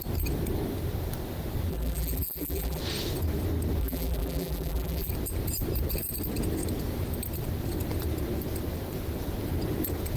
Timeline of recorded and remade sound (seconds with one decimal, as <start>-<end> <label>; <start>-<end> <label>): 0.0-1.7 recorded; 1.7-2.8 remade; 2.8-3.8 recorded; 3.8-5.1 remade; 5.1-10.2 recorded